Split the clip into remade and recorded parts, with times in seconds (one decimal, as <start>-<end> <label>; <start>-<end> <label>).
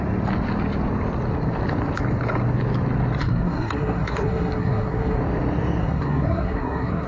0.0-3.2 recorded; 3.2-5.2 remade; 5.2-5.8 recorded; 5.8-7.1 remade